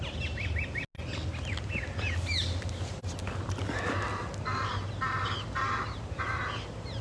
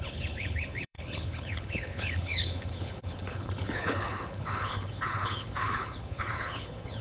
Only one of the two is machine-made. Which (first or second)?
second